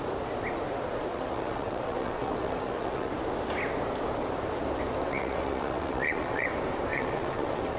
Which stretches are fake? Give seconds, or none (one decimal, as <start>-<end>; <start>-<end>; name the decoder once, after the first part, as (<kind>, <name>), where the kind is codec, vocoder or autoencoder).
1.1-3.1 (vocoder, WaveNeXt); 5.0-6.5; 6.9-7.8